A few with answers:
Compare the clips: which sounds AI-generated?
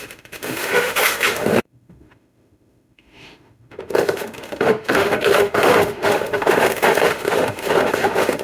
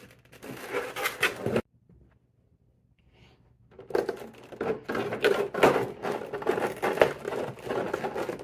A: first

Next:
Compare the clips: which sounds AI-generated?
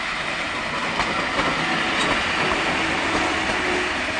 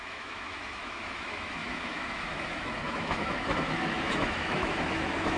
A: second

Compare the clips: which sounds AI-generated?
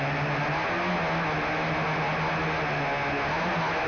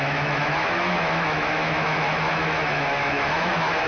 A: second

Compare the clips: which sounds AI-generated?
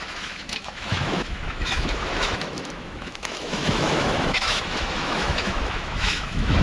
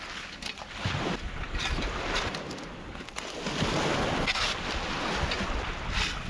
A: first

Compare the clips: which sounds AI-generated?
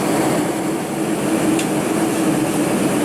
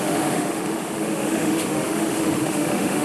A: second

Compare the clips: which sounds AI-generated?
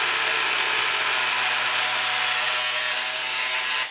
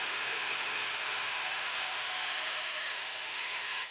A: second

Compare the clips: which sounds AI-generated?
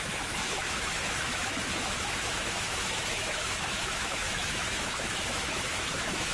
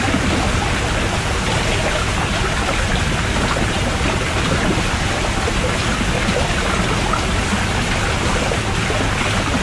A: first